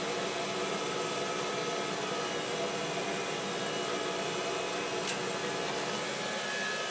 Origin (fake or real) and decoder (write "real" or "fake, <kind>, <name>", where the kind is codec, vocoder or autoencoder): real